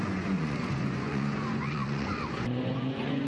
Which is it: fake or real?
fake